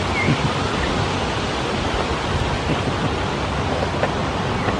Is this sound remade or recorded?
recorded